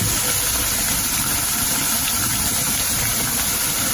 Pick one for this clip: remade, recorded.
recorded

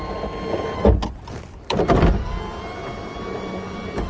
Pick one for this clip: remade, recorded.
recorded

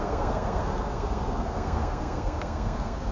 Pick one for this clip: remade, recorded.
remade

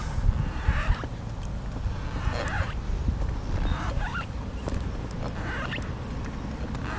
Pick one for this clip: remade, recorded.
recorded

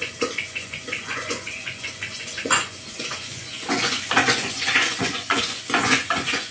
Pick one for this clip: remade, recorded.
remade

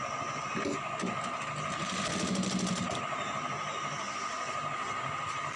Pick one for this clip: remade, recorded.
recorded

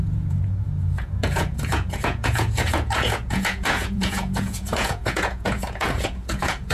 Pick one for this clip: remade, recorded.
remade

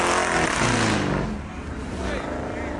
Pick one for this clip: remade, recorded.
recorded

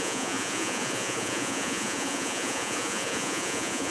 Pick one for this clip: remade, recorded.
remade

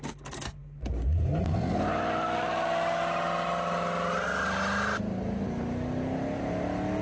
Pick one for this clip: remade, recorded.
recorded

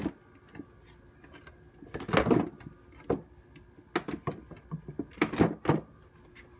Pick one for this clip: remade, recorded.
recorded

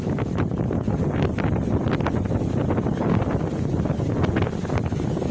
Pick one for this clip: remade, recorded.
recorded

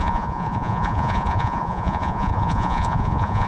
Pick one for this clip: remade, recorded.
remade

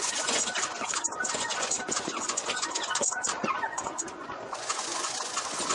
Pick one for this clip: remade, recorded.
remade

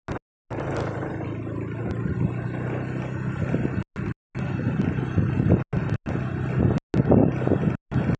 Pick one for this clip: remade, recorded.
recorded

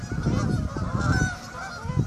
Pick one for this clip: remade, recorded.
recorded